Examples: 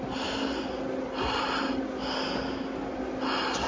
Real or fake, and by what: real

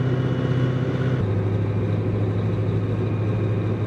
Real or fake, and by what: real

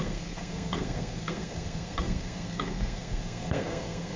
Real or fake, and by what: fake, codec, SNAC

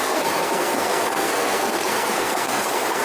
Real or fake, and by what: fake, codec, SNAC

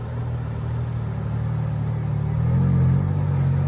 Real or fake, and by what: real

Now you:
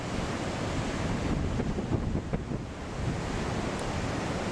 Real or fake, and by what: real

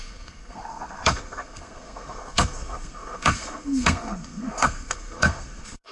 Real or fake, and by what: fake, codec, SNAC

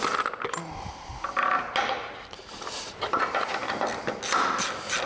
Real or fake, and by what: real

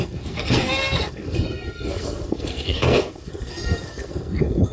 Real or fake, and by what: fake, codec, SNAC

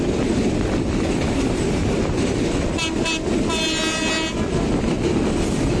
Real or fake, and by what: real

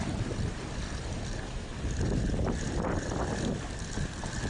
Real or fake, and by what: real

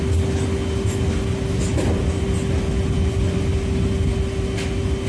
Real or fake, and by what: real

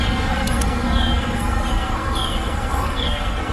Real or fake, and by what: fake, codec, SNAC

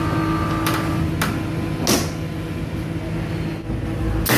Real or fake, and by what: real